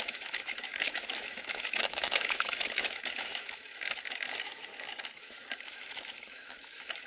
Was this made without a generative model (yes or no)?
no